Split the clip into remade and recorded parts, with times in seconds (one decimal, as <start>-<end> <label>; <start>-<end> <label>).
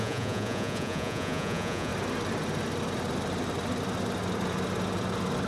0.0-1.9 remade; 1.9-5.5 recorded